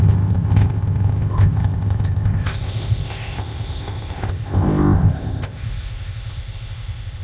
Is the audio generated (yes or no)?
yes